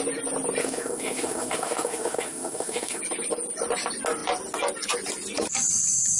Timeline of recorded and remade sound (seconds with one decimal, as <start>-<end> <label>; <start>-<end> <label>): 0.0-0.6 recorded; 0.6-3.0 remade; 3.0-6.2 recorded